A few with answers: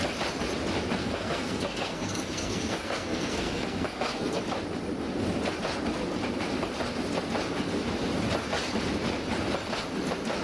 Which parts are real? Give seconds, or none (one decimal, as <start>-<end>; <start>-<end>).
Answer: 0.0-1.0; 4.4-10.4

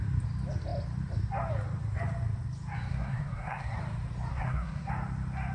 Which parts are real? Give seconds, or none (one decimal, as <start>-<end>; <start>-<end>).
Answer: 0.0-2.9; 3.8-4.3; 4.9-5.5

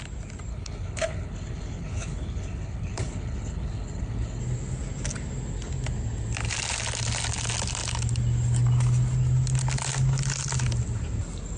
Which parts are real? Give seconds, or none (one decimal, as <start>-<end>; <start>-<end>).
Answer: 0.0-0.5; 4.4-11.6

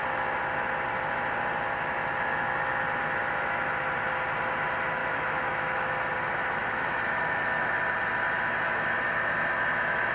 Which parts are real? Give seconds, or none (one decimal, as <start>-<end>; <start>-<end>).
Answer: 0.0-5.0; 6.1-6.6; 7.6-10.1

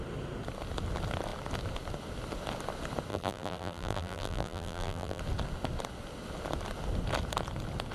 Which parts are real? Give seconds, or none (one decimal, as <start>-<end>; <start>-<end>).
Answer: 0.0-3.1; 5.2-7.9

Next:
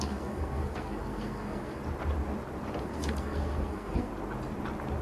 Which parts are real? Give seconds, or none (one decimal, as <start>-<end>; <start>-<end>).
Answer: 1.8-2.8; 4.1-5.0